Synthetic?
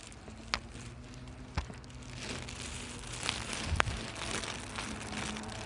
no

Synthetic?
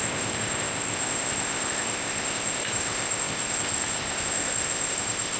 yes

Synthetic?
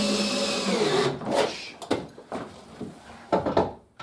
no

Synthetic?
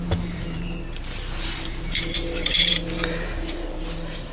yes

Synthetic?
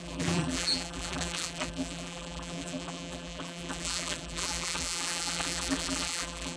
yes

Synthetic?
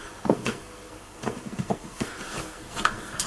yes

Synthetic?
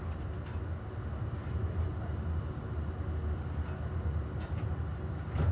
no